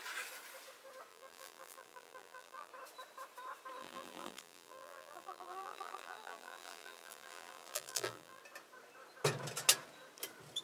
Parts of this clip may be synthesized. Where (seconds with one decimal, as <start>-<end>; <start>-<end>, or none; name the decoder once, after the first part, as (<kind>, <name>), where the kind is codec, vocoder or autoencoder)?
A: 1.1-2.7 (vocoder, BigVGAN v2); 3.8-8.4